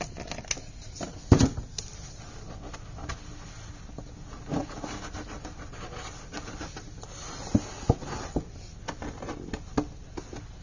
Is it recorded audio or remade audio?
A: recorded